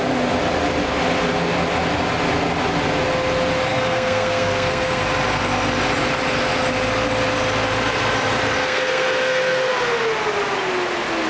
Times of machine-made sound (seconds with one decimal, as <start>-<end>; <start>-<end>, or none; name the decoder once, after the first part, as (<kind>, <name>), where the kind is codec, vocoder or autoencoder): 3.7-5.0 (codec, SNAC); 8.6-9.7